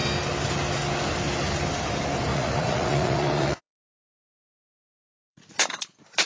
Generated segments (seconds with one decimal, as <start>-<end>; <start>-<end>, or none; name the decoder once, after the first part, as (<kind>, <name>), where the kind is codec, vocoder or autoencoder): 2.3-5.5 (vocoder, Vocos)